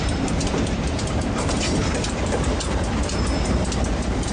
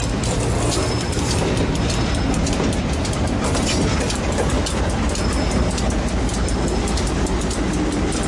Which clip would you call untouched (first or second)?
second